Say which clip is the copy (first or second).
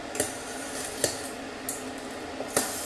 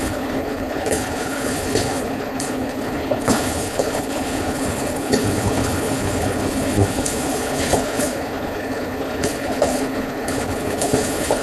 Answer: second